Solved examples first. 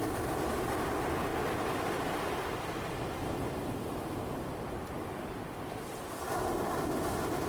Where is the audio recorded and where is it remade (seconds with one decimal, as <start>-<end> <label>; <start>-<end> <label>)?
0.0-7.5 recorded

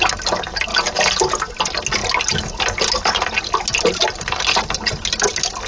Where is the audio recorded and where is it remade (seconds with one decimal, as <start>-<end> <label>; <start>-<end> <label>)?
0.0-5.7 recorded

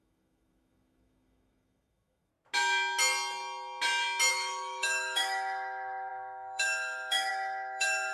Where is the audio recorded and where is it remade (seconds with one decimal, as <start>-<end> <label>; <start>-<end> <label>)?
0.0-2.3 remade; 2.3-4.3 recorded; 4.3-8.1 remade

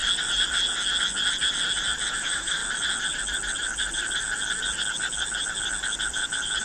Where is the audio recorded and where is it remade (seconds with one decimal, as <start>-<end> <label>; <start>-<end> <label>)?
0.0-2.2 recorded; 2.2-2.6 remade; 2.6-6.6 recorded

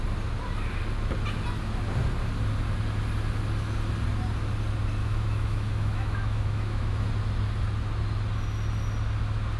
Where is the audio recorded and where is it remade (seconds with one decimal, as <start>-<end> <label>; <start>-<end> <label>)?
0.0-5.0 recorded; 5.0-7.1 remade; 7.1-9.6 recorded

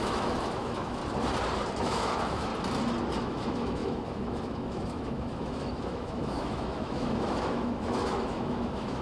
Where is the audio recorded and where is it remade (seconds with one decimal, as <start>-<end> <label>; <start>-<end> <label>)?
0.0-1.0 remade; 1.0-1.8 recorded; 1.8-2.5 remade; 2.5-3.2 recorded; 3.2-9.0 remade